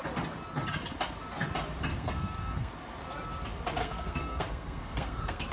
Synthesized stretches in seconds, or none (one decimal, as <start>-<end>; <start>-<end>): 1.9-2.7; 3.8-5.5